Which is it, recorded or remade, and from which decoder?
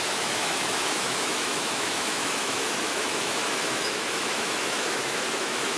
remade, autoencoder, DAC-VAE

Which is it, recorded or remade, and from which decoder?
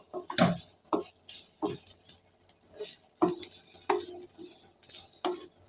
recorded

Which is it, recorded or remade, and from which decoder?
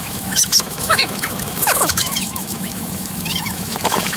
remade, autoencoder, DAC-VAE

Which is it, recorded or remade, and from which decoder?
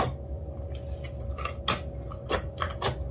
recorded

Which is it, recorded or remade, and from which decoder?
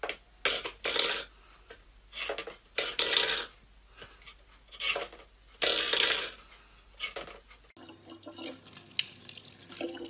recorded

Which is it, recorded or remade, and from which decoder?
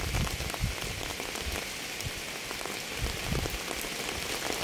recorded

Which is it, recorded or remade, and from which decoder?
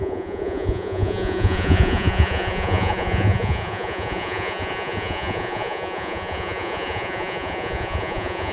remade, vocoder, Vocos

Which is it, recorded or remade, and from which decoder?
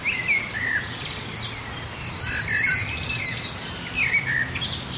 recorded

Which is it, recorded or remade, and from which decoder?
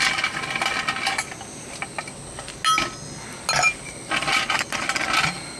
recorded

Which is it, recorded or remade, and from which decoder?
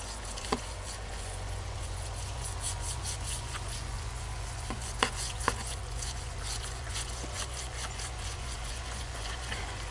remade, vocoder, Vocos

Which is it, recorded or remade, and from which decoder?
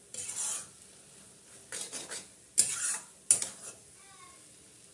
recorded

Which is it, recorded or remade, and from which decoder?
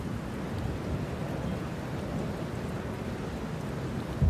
recorded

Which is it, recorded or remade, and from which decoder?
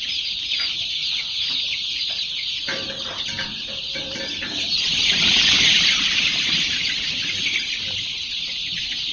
remade, vocoder, BigVGAN v2